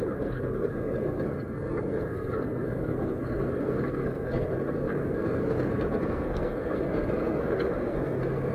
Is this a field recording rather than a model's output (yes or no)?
no